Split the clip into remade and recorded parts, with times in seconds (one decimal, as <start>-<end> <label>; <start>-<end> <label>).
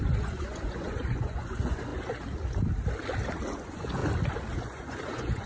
0.0-1.9 remade; 1.9-3.6 recorded; 3.6-4.0 remade; 4.0-4.6 recorded; 4.6-5.5 remade